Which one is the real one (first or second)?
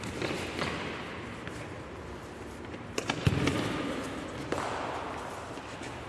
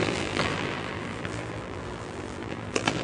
first